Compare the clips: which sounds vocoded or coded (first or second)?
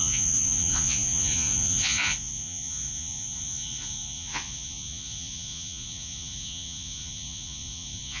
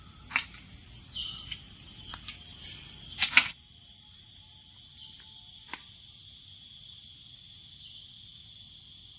first